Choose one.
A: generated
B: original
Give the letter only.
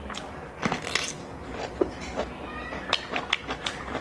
B